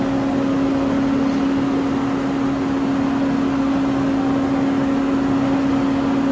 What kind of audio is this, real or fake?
real